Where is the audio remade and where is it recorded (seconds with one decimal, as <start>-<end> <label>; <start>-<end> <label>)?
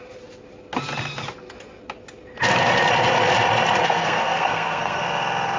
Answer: 0.0-3.8 recorded; 3.8-5.0 remade; 5.0-5.6 recorded